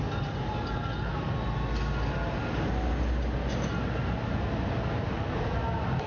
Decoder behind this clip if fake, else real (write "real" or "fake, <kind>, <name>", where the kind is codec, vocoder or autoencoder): real